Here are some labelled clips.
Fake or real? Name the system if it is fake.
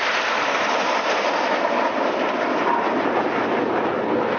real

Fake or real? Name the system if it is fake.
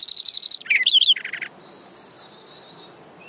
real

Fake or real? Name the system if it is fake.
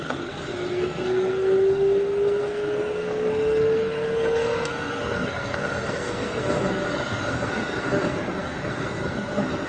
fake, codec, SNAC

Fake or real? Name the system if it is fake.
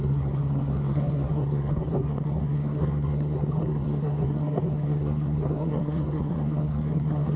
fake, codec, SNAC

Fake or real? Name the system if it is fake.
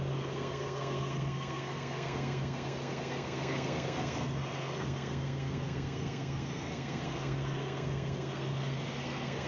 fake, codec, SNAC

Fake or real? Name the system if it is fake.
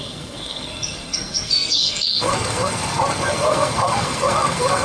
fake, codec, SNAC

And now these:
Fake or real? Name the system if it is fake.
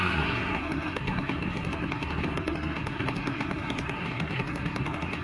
fake, codec, SNAC